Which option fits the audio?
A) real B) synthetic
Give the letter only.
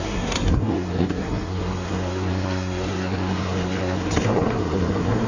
B